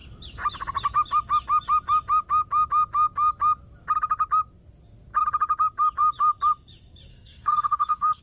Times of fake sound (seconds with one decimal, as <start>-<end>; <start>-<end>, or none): 7.1-8.2